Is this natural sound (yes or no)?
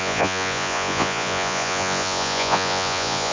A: no